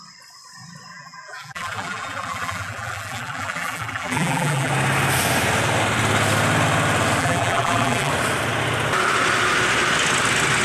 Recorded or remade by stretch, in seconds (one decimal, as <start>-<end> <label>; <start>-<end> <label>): 0.0-0.9 recorded; 0.9-4.7 remade; 4.7-7.2 recorded; 7.2-8.1 remade; 8.1-10.6 recorded